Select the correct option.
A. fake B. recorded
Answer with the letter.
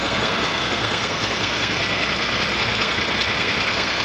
A